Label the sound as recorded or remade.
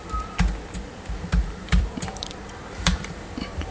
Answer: remade